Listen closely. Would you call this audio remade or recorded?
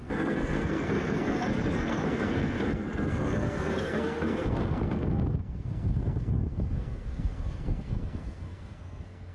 remade